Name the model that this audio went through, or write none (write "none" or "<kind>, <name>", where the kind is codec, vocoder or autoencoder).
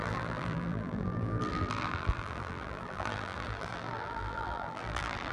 vocoder, BigVGAN v2